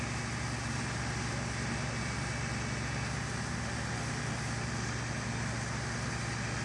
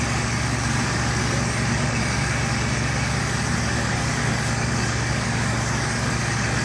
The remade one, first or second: second